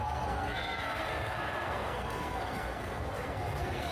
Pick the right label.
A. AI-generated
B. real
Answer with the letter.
A